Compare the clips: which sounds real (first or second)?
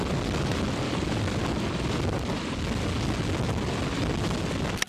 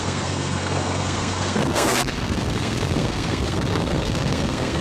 first